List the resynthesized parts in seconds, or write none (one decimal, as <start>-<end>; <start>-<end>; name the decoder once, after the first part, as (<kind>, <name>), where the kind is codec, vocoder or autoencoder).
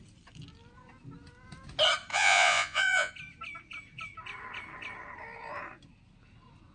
2.1-3.1 (vocoder, Vocos)